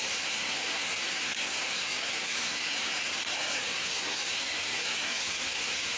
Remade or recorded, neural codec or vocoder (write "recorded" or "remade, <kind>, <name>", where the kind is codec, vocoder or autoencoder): remade, codec, SNAC